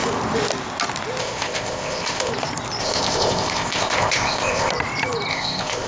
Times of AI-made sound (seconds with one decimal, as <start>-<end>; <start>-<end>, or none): 1.2-2.3; 2.8-4.7; 5.3-5.9